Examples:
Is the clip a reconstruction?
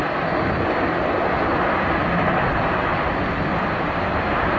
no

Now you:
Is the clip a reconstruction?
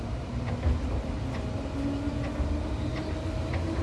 no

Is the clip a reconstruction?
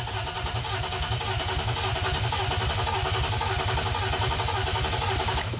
no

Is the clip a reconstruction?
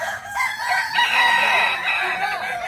yes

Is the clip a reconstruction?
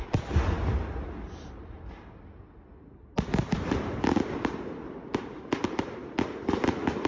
no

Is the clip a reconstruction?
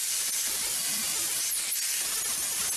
no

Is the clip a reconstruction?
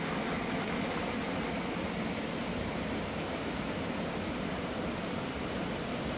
no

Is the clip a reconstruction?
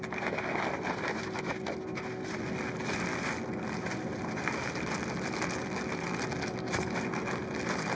no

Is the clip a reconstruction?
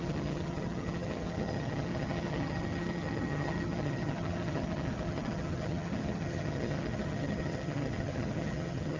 yes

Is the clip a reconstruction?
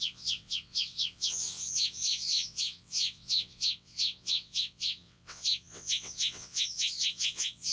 yes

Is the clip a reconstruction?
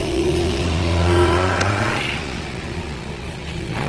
yes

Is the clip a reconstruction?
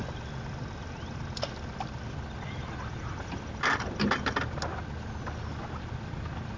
no